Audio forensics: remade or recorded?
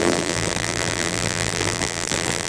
remade